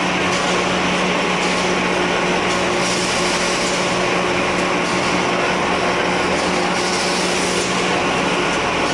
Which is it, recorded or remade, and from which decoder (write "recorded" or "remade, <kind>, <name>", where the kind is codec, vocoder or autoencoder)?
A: recorded